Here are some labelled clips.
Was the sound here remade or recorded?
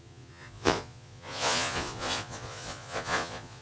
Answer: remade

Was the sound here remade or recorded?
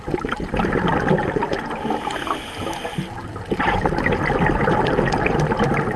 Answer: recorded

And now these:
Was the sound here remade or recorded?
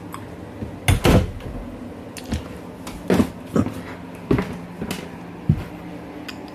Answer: recorded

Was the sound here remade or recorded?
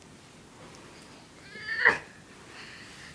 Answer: recorded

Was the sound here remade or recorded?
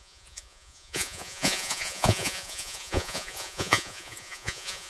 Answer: remade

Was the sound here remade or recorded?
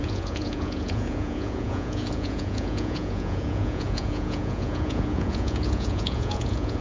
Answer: remade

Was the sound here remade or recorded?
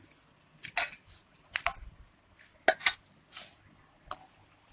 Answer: recorded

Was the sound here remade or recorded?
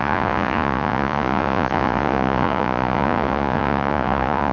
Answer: remade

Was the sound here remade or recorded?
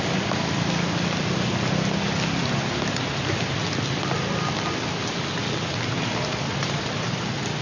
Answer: recorded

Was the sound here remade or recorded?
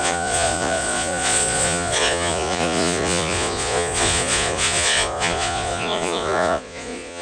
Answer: remade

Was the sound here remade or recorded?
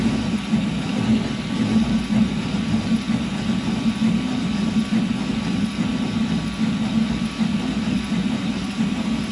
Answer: recorded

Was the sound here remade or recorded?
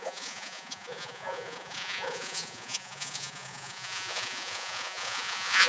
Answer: remade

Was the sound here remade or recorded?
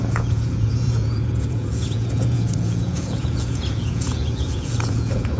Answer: remade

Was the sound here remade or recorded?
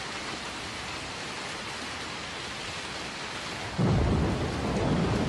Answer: recorded